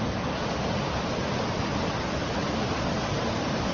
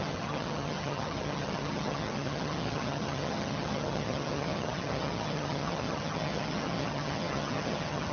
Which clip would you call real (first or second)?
first